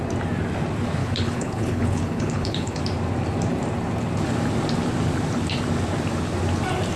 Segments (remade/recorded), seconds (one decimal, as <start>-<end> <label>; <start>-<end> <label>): 0.0-1.0 recorded; 1.0-2.8 remade; 2.8-7.0 recorded